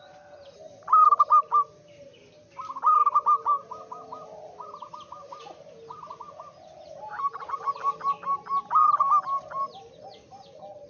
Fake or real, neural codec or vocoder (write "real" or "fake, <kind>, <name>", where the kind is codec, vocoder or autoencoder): real